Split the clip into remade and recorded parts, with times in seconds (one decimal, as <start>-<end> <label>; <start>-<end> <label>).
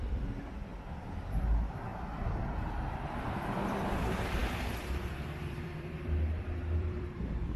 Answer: 0.0-1.9 remade; 1.9-3.1 recorded; 3.1-4.4 remade; 4.4-5.4 recorded; 5.4-7.6 remade